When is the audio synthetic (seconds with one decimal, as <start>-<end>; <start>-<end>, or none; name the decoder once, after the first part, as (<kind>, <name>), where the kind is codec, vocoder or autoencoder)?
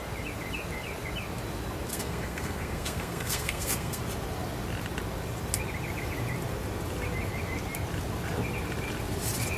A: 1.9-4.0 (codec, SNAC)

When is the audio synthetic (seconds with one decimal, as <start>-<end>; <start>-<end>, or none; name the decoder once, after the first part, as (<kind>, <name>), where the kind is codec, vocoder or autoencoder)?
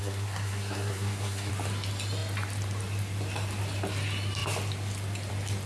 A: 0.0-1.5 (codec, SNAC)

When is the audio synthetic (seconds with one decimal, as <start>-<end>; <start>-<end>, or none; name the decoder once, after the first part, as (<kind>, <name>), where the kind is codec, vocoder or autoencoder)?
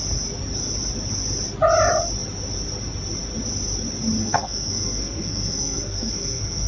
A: 4.2-6.7 (codec, SNAC)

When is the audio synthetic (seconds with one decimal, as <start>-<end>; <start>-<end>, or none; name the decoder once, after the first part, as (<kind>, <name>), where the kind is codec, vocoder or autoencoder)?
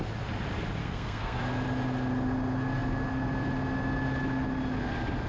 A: 0.8-1.4 (codec, SNAC)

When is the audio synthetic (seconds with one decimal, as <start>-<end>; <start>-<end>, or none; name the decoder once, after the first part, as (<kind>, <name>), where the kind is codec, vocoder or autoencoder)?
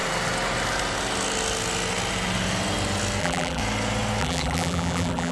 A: 3.2-3.6 (vocoder, BigVGAN v2); 4.2-5.3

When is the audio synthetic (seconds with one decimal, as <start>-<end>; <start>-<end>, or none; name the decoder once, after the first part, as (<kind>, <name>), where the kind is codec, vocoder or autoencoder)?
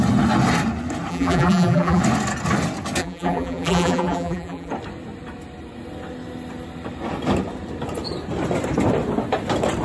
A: 1.1-2.0 (vocoder, BigVGAN v2); 3.0-4.7